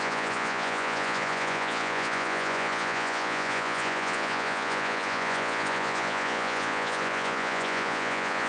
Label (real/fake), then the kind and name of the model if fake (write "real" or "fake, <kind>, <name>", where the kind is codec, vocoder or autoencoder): fake, vocoder, Vocos